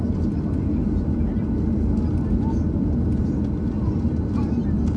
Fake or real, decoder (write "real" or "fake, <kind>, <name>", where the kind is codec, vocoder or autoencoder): real